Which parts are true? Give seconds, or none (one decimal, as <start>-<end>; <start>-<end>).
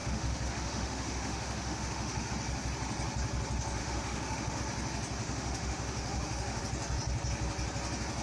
2.3-3.8; 4.6-5.2; 6.6-8.2